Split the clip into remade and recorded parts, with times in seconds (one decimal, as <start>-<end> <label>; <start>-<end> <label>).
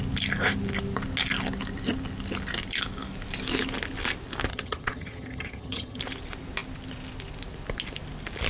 0.0-4.5 recorded; 4.5-6.0 remade; 6.0-8.5 recorded